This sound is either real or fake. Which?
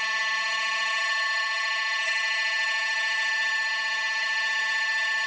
fake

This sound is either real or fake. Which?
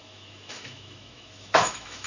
fake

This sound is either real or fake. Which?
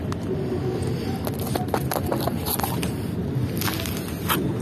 real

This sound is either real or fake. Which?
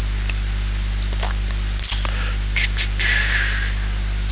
real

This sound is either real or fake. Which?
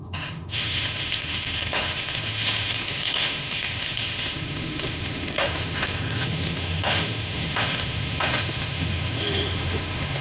fake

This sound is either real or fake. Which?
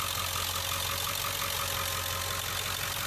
real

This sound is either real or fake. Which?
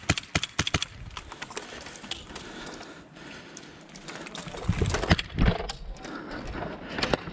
real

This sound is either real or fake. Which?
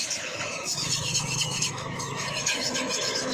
fake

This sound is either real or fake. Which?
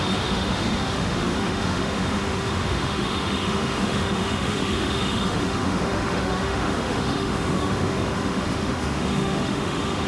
fake